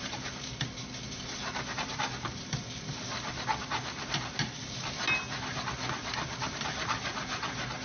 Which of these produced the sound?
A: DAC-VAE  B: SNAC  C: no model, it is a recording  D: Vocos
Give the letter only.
C